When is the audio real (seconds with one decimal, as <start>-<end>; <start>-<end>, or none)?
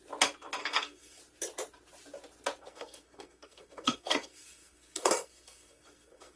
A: 0.0-0.6; 1.2-2.6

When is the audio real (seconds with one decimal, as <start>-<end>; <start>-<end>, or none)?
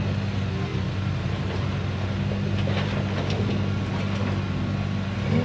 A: 0.0-5.4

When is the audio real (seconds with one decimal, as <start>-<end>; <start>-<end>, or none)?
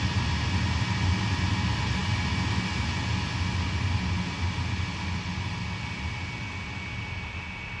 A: 0.0-7.8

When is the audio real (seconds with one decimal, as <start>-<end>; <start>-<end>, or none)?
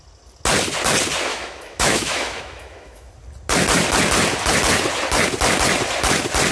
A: 0.0-1.3; 3.1-6.5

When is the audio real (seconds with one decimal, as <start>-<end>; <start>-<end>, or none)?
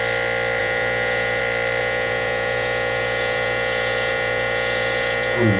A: 0.0-0.6; 1.4-1.8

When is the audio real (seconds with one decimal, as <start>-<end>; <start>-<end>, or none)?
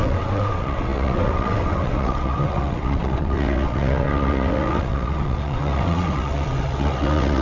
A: none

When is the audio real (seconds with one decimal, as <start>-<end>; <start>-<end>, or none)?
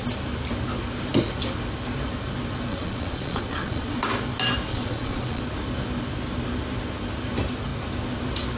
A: 0.0-2.7; 4.0-4.7; 5.4-8.6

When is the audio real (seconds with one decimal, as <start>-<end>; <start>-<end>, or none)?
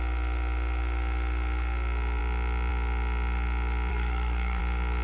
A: 0.0-3.9; 4.6-5.0